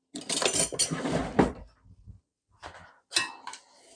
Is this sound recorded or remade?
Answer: recorded